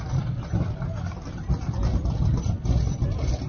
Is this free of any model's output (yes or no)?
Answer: yes